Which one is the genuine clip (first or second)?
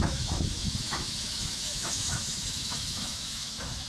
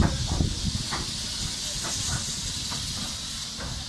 second